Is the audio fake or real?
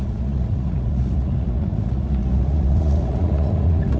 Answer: fake